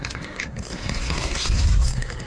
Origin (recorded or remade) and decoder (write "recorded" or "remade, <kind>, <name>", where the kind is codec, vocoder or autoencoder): remade, codec, SNAC